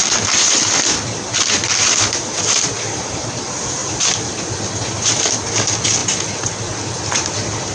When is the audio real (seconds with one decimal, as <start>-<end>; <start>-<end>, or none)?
0.0-7.7